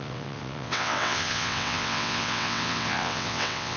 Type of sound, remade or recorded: remade